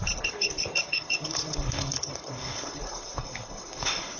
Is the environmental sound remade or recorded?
remade